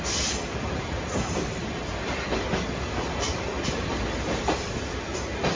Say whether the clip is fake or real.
real